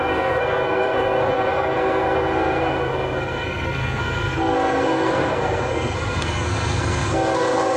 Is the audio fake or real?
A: fake